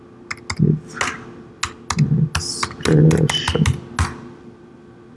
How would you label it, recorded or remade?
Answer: recorded